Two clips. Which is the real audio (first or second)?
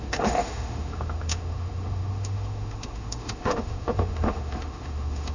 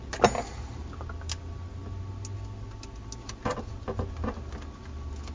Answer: second